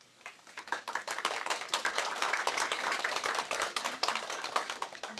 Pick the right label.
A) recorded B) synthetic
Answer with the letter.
B